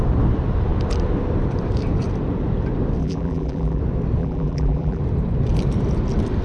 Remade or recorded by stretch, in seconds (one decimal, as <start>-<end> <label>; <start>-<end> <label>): 0.0-3.0 recorded; 3.0-3.8 remade; 3.8-4.2 recorded; 4.2-5.0 remade; 5.0-6.4 recorded